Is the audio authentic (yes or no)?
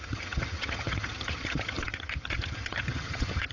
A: no